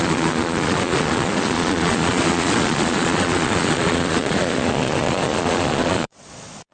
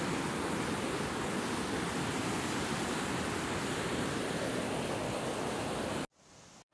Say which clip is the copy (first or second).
first